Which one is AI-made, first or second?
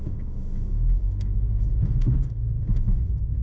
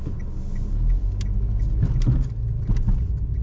first